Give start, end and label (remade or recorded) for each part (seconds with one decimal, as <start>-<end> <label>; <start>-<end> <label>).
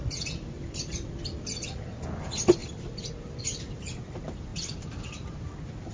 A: 0.0-2.6 recorded; 2.6-3.1 remade; 3.1-5.9 recorded